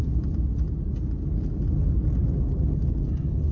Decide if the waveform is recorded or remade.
recorded